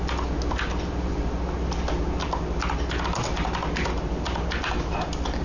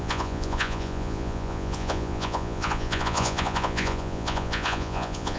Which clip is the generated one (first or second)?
second